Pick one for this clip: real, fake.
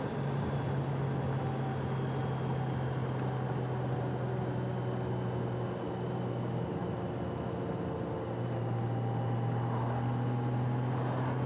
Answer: real